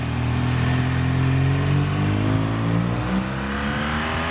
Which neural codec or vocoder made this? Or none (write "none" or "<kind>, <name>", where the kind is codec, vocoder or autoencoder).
none